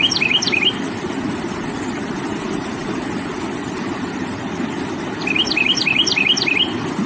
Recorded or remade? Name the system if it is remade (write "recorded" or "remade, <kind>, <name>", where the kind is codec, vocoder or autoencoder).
recorded